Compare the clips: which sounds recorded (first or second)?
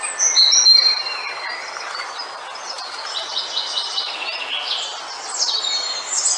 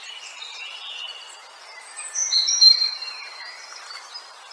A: first